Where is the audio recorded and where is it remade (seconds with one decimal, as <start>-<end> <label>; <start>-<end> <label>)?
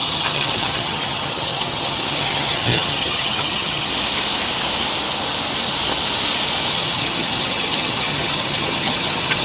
0.0-3.9 remade; 3.9-6.7 recorded; 6.7-9.4 remade